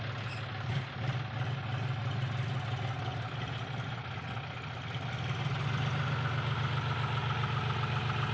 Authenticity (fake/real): real